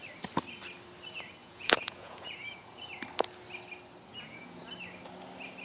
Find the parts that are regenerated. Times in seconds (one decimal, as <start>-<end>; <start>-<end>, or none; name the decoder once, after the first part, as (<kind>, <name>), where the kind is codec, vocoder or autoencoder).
1.4-2.9 (vocoder, Vocos); 4.1-4.6